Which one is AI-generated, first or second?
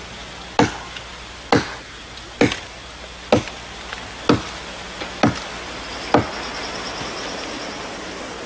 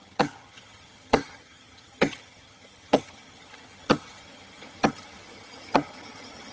second